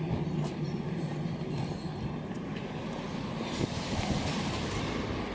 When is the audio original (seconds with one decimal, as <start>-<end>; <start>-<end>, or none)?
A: 0.0-3.1; 4.0-5.3